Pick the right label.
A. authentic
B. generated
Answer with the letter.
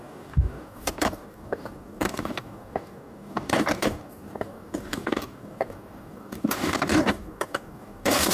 B